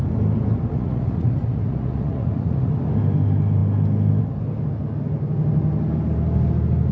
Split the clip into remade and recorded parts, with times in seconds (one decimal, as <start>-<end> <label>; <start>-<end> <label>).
0.0-0.7 recorded; 0.7-2.7 remade; 2.7-6.9 recorded